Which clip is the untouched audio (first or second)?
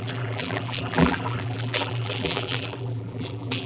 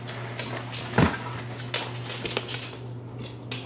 second